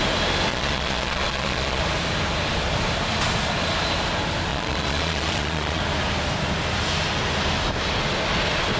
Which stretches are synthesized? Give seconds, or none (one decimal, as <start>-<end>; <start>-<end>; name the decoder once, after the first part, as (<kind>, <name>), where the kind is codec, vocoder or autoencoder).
0.5-1.8 (vocoder, Vocos); 4.5-5.8